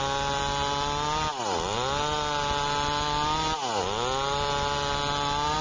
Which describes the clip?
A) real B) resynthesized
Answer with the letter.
A